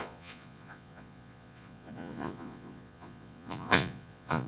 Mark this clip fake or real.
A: fake